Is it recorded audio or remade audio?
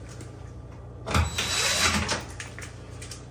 recorded